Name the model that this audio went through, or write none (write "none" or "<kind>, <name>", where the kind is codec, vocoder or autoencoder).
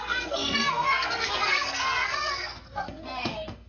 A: codec, SNAC